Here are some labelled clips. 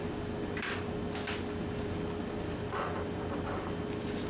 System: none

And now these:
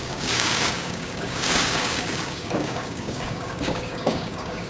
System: codec, DAC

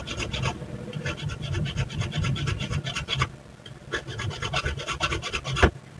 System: none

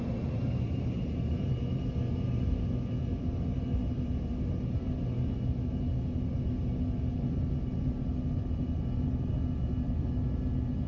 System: none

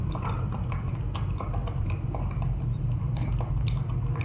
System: vocoder, BigVGAN v2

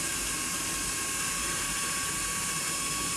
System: vocoder, BigVGAN v2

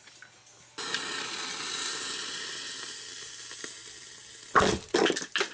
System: none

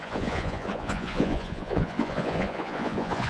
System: vocoder, Vocos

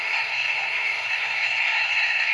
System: codec, SNAC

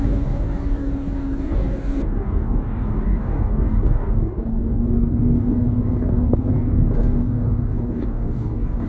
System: codec, DAC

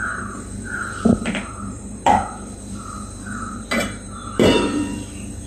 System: vocoder, BigVGAN v2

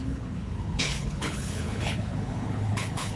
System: codec, HILCodec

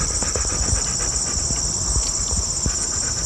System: none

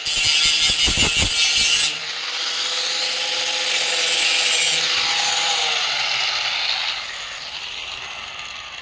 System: none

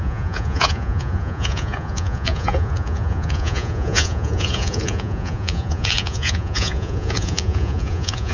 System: vocoder, Vocos